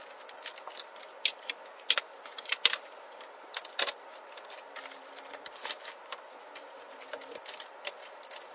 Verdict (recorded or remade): recorded